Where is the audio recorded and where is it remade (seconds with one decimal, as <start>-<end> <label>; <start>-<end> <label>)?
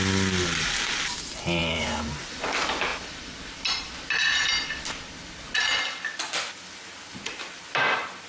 0.0-1.6 recorded; 1.6-2.4 remade; 2.4-8.3 recorded